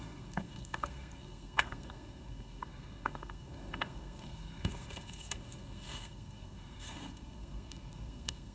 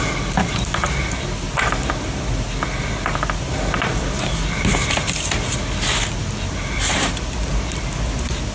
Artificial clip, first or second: first